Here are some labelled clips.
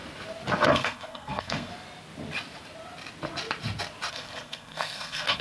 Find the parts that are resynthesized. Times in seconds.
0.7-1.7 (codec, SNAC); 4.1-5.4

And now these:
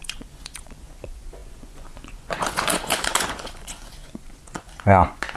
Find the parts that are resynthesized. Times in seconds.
0.0-5.4 (vocoder, Vocos)

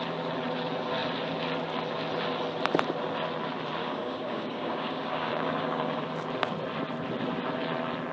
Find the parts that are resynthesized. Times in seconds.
3.8-6.0 (codec, DAC)

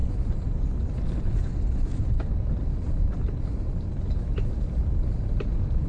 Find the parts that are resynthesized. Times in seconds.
none